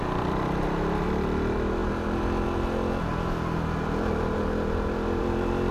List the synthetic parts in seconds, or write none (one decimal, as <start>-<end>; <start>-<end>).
0.0-1.8; 5.2-5.7